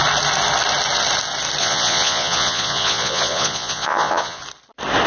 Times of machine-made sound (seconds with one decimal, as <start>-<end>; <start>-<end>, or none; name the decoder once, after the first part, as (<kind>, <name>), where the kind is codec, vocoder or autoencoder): 1.6-4.4 (vocoder, Vocos)